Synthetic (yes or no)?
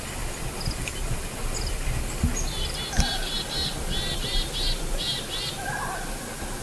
no